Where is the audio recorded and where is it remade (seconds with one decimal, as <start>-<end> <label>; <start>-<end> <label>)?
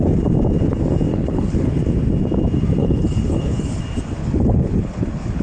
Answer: 0.0-1.1 recorded; 1.1-1.8 remade; 1.8-2.8 recorded; 2.8-3.8 remade; 3.8-4.2 recorded; 4.2-5.4 remade